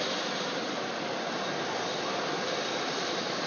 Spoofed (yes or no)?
no